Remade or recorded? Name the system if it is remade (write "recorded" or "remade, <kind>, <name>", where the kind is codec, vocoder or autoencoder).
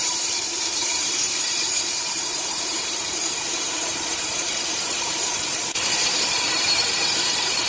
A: remade, vocoder, BigVGAN v2